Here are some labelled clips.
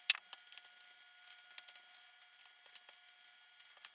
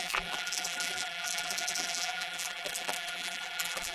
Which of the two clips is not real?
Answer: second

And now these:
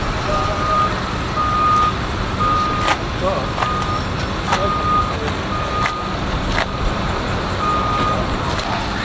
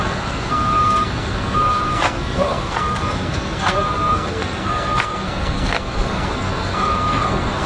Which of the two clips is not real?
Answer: second